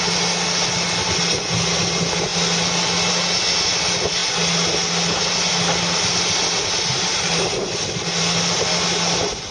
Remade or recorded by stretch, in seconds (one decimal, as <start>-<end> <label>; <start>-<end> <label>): 0.0-9.5 recorded